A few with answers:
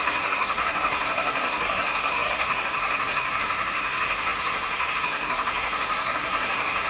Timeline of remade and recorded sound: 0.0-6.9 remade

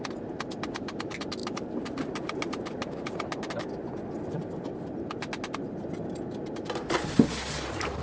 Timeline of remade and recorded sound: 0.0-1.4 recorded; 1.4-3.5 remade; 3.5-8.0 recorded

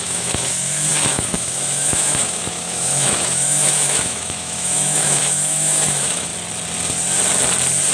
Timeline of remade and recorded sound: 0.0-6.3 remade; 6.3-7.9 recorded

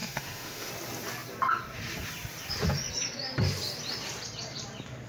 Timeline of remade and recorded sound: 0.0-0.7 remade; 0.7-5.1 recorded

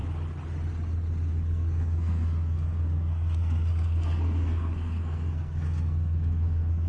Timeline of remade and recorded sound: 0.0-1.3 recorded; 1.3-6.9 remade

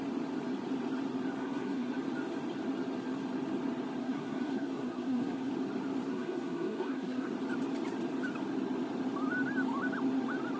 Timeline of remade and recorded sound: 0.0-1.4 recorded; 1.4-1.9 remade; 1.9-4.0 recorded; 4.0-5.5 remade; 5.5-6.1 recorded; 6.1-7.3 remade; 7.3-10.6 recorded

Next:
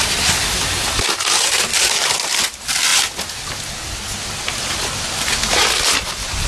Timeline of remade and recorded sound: 0.0-6.5 recorded